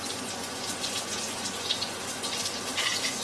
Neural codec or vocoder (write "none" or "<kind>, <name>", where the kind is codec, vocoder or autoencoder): vocoder, Vocos